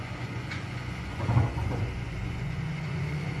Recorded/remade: remade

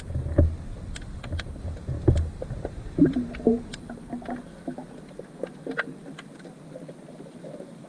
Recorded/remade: recorded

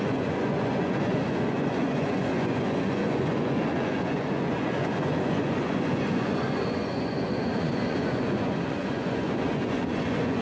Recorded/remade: remade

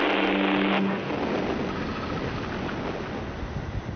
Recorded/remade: recorded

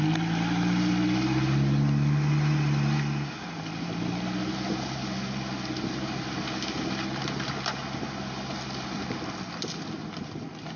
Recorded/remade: recorded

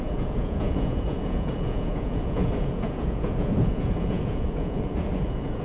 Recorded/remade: remade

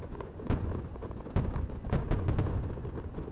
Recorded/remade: remade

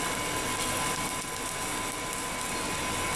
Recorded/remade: recorded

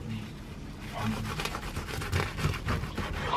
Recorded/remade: recorded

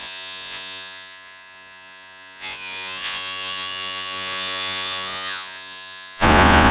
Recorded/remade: remade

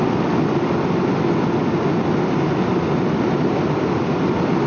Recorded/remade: recorded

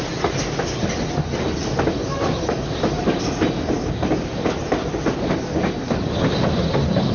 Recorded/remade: recorded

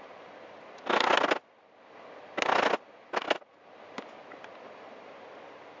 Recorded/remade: recorded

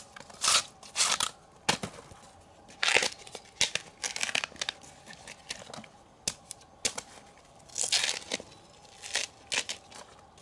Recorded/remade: recorded